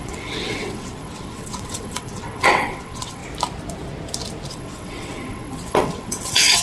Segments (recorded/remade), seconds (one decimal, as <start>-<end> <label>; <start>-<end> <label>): 0.0-3.2 remade; 3.2-4.5 recorded; 4.5-6.6 remade